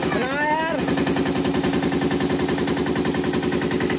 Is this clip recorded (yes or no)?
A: yes